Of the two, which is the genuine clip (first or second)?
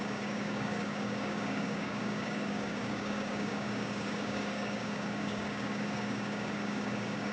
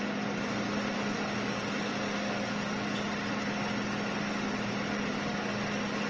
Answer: second